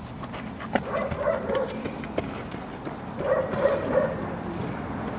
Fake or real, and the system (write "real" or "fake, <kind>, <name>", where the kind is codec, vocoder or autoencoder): real